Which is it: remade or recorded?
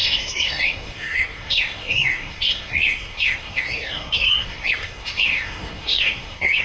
remade